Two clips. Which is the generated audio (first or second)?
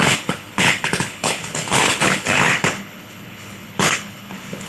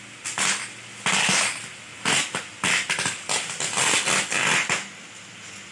first